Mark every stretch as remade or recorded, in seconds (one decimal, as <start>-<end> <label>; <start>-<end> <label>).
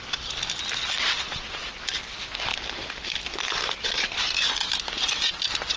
0.0-5.8 recorded